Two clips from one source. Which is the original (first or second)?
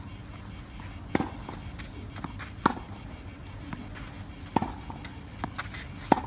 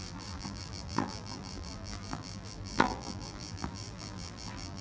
first